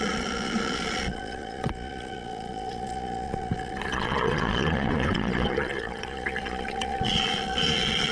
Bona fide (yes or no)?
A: no